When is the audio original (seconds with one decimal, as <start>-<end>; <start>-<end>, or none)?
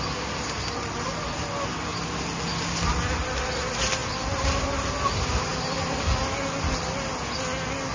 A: 0.0-7.9